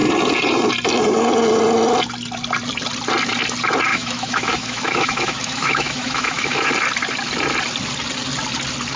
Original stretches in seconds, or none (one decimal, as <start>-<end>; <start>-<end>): 0.0-3.9; 6.7-9.0